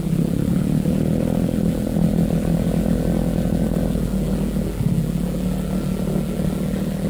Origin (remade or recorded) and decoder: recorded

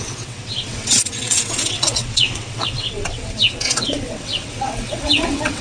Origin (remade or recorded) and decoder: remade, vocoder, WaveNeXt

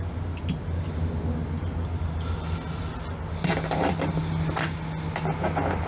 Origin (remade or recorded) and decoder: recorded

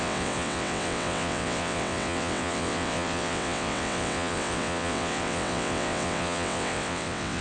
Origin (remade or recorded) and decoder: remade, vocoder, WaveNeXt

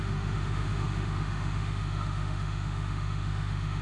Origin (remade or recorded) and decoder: remade, autoencoder, DAC-VAE